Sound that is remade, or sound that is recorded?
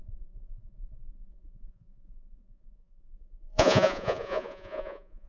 remade